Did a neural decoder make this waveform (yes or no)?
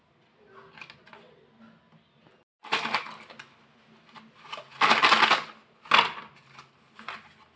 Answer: no